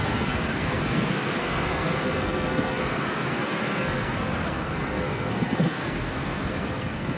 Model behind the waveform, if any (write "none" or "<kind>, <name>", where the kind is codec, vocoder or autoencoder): codec, SNAC